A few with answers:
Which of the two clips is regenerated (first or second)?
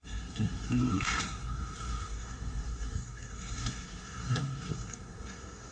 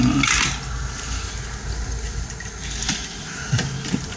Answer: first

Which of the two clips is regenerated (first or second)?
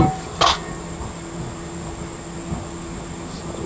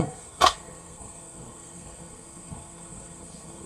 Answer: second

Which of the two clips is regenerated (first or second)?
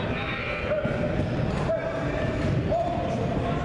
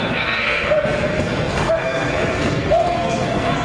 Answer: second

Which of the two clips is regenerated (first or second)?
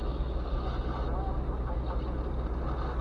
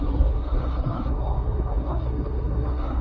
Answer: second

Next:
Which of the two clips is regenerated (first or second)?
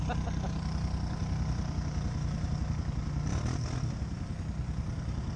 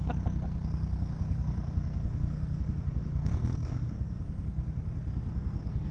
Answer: second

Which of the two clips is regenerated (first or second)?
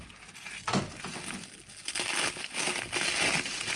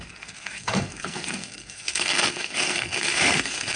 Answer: second